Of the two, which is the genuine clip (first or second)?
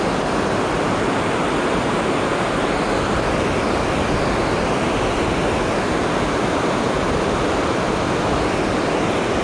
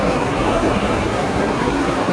first